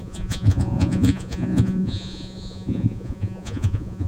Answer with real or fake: fake